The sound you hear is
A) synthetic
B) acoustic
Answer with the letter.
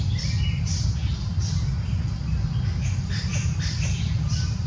B